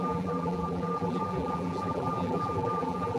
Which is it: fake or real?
fake